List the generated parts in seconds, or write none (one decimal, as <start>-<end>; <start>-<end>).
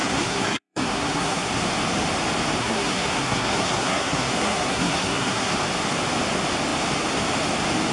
0.0-1.5; 2.6-5.5